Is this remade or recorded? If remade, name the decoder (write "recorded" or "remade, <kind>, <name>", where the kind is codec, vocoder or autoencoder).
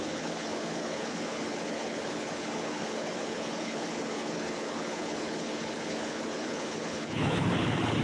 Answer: remade, codec, HILCodec